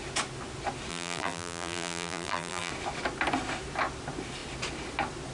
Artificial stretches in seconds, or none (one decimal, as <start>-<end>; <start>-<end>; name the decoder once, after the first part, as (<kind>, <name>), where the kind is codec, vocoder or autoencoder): 0.9-2.7 (vocoder, BigVGAN v2)